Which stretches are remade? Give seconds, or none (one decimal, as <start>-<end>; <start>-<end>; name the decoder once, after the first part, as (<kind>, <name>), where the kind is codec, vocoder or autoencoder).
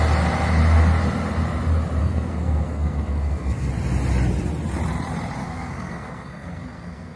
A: 2.0-3.7 (codec, SNAC); 5.4-7.2